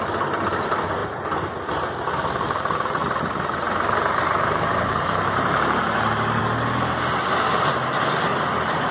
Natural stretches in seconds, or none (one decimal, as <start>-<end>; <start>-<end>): 0.0-3.0; 6.4-8.9